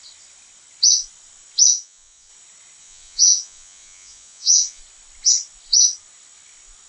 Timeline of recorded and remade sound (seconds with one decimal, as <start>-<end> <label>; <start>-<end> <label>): 0.0-1.7 recorded; 1.7-2.3 remade; 2.3-2.8 recorded; 2.8-4.8 remade; 4.8-6.9 recorded